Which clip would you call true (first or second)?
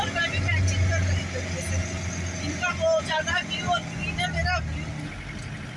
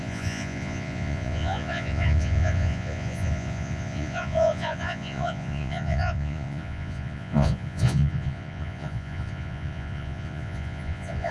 first